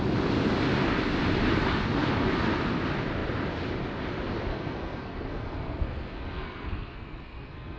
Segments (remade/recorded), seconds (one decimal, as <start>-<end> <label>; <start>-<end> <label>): 0.0-4.5 recorded; 4.5-7.8 remade